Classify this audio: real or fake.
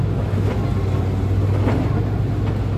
real